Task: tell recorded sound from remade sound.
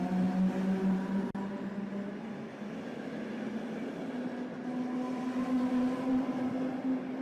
recorded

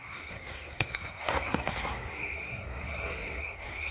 remade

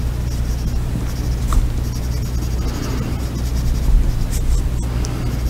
recorded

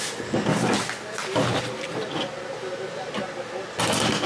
recorded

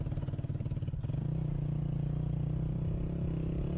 recorded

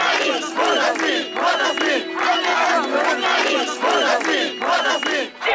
recorded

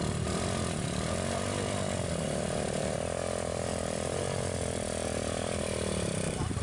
remade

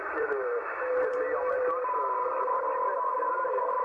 remade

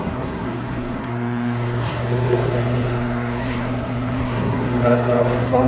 remade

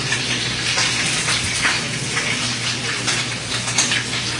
recorded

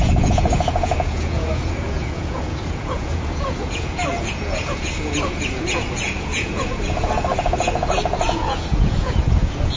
remade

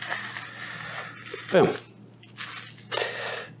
recorded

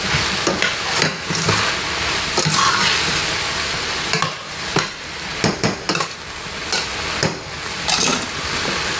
recorded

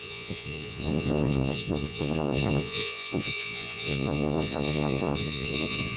remade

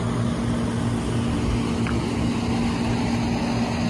recorded